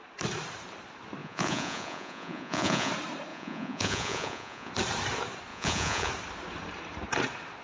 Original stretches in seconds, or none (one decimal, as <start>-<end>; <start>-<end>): 0.0-1.2; 2.9-3.3; 4.7-5.5; 6.1-7.6